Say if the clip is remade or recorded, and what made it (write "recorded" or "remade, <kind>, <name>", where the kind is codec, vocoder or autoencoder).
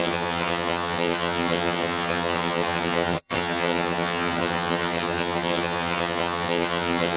remade, vocoder, HiFi-GAN